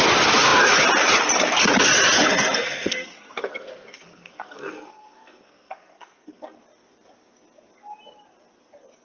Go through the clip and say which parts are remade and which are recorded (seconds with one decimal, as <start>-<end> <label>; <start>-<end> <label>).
0.0-2.6 recorded; 2.6-6.6 remade; 6.6-9.0 recorded